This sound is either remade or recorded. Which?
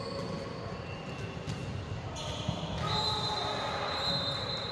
recorded